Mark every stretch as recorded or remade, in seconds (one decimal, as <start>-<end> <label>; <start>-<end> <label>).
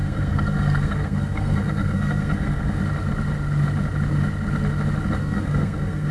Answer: 0.0-2.8 remade; 2.8-5.2 recorded; 5.2-6.1 remade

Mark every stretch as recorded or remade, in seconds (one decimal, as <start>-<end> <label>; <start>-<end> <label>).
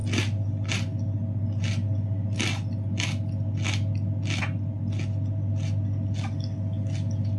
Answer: 0.0-7.4 recorded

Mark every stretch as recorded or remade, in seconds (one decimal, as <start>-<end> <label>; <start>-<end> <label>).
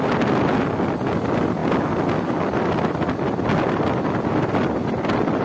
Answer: 0.0-5.4 recorded